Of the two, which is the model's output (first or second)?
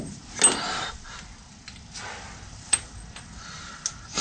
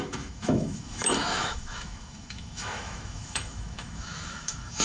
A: second